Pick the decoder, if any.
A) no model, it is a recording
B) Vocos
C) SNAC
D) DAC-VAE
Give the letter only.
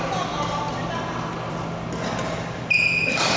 A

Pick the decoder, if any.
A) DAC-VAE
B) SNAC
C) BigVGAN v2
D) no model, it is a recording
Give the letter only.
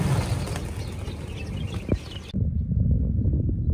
D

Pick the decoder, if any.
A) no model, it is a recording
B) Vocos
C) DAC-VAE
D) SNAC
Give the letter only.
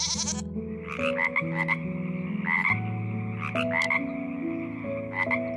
A